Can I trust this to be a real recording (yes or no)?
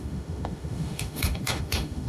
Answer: no